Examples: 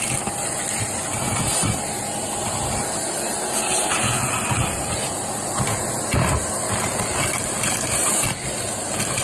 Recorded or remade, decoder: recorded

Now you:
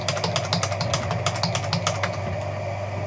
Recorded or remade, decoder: recorded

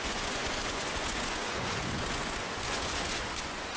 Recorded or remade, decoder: remade, vocoder, Vocos